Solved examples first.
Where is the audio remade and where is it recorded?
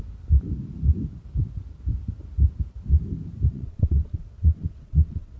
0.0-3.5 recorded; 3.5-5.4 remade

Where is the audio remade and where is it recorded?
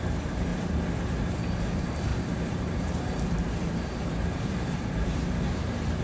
0.0-0.5 recorded; 0.5-1.3 remade; 1.3-2.1 recorded; 2.1-6.0 remade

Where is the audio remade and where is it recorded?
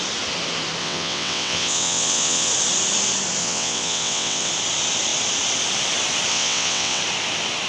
0.0-0.8 recorded; 0.8-2.5 remade; 2.5-3.4 recorded; 3.4-4.5 remade; 4.5-6.3 recorded; 6.3-7.0 remade; 7.0-7.7 recorded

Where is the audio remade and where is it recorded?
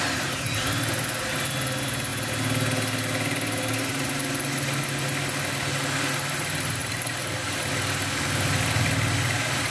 0.0-6.8 recorded; 6.8-7.7 remade; 7.7-9.7 recorded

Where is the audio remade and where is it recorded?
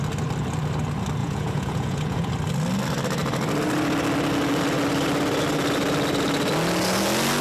0.0-1.2 recorded; 1.2-2.3 remade; 2.3-7.4 recorded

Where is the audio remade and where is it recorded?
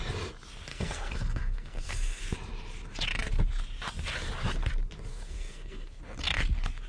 0.0-0.7 recorded; 0.7-2.2 remade; 2.2-5.1 recorded; 5.1-6.0 remade; 6.0-6.9 recorded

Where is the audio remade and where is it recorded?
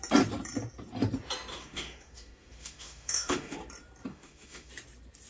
0.0-1.5 recorded; 1.5-3.6 remade; 3.6-4.1 recorded; 4.1-4.7 remade; 4.7-5.3 recorded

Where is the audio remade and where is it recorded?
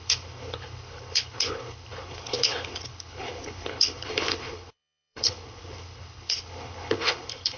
0.0-7.6 remade